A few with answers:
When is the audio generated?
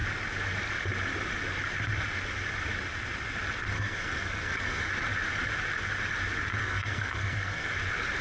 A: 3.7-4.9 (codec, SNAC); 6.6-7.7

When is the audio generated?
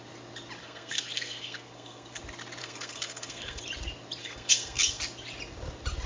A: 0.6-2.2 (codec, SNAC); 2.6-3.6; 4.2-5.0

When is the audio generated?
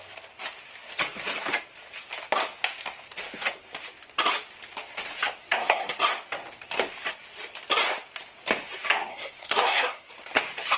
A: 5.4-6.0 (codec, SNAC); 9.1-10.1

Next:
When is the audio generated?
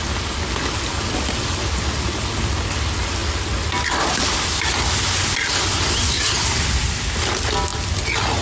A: none